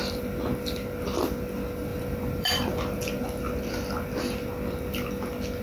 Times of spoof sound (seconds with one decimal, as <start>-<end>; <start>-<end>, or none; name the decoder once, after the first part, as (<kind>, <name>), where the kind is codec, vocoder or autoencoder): 1.9-3.2 (vocoder, BigVGAN v2)